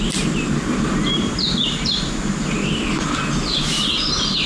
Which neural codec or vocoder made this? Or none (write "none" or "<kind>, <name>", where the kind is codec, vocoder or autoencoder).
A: none